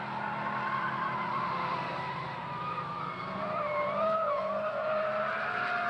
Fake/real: real